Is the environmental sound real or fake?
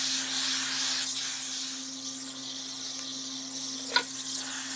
real